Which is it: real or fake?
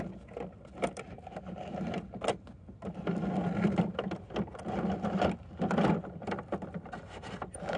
real